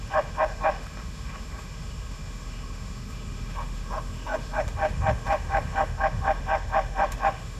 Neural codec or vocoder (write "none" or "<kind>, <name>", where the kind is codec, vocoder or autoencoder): autoencoder, DAC-VAE